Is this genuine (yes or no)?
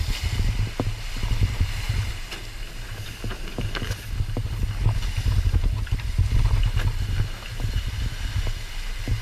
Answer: yes